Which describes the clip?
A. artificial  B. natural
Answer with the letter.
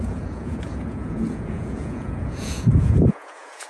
A